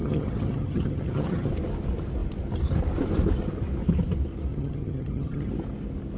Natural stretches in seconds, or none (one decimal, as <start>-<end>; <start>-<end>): 1.5-4.5; 5.5-6.2